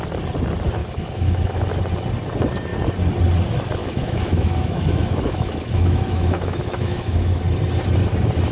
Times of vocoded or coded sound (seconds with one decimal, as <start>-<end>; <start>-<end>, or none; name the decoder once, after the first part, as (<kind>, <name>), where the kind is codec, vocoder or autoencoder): 0.8-1.8 (autoencoder, DAC-VAE); 3.8-7.4